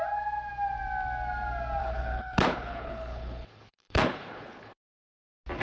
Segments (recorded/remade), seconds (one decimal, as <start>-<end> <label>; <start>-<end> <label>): 0.0-1.8 recorded; 1.8-4.9 remade; 4.9-5.6 recorded